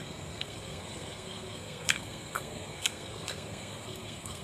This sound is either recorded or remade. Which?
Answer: remade